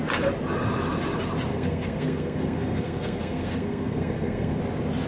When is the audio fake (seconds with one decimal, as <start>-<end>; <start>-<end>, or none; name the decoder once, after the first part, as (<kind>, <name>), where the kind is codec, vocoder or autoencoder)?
1.5-4.6 (codec, SNAC)